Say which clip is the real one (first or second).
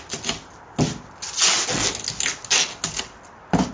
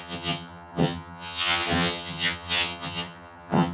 first